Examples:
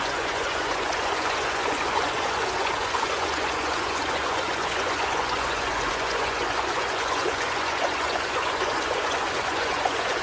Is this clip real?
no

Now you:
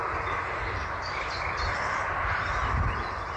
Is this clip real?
yes